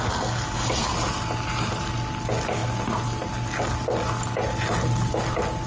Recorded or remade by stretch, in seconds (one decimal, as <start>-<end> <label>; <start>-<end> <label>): 0.0-5.7 recorded

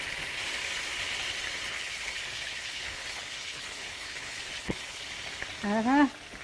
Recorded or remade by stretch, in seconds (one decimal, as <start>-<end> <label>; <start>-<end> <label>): 0.0-1.7 recorded; 1.7-5.0 remade; 5.0-6.4 recorded

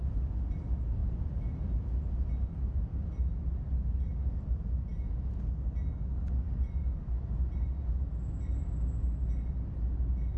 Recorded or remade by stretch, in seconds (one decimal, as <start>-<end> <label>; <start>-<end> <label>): 0.0-10.4 recorded

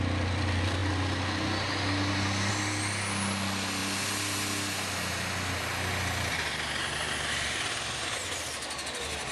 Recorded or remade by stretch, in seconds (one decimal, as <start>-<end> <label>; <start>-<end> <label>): 0.0-9.3 recorded

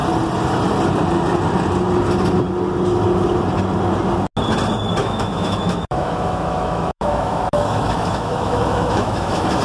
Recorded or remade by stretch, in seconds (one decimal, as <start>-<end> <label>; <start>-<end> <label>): 0.0-5.0 recorded; 5.0-9.6 remade